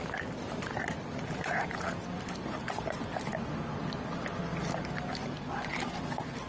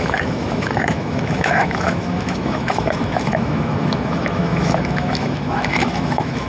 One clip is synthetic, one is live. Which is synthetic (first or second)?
second